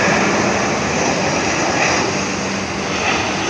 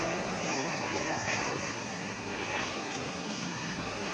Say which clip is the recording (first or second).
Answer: first